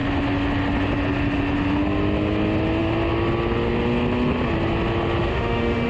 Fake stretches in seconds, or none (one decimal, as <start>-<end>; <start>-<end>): 5.3-5.9